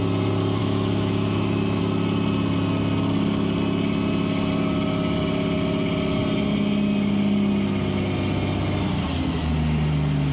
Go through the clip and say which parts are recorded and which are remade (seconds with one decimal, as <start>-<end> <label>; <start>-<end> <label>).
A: 0.0-0.6 recorded; 0.6-1.8 remade; 1.8-10.3 recorded